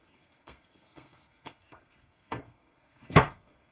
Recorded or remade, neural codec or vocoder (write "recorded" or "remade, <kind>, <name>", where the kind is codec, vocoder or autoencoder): remade, codec, SNAC